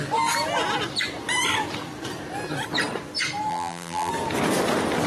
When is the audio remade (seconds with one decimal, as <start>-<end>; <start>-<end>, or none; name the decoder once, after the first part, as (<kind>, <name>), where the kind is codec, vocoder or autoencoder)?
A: 3.5-4.1 (vocoder, BigVGAN v2)